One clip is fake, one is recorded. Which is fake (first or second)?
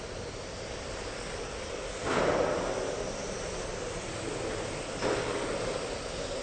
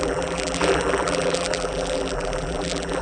second